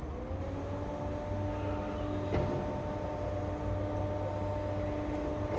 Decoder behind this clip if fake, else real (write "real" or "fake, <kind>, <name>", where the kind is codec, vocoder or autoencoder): real